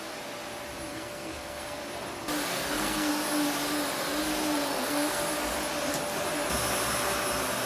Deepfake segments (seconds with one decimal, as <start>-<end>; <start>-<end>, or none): 0.9-1.8; 2.5-3.1; 4.4-5.2